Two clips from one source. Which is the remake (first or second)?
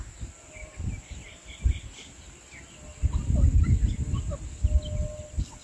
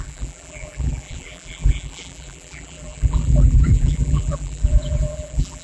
second